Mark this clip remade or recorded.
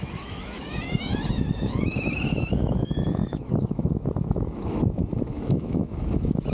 remade